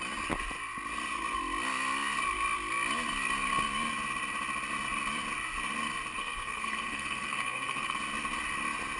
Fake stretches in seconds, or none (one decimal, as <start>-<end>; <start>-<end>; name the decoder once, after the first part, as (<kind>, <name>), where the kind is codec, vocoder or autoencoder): 6.2-8.0 (codec, SNAC)